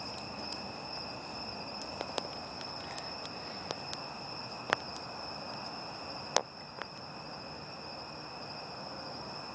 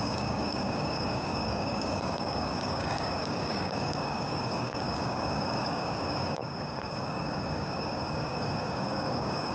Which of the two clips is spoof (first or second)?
second